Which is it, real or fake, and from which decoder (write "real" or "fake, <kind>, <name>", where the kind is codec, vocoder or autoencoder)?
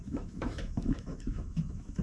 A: fake, autoencoder, DAC-VAE